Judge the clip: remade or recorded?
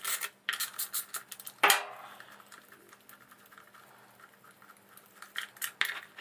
recorded